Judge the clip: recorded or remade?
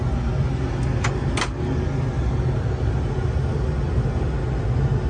recorded